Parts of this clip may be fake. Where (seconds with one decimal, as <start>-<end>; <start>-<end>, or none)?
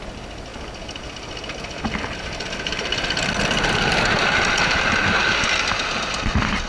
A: none